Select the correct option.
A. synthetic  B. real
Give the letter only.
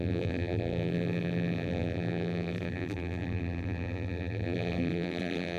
A